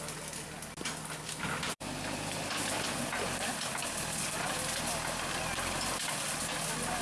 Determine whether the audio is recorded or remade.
recorded